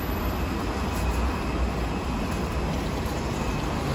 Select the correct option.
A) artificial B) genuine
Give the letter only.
B